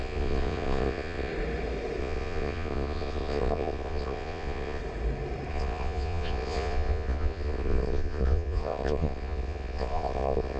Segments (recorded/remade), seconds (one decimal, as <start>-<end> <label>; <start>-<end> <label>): 0.0-1.3 remade; 1.3-2.0 recorded; 2.0-4.8 remade; 4.8-5.5 recorded; 5.5-10.6 remade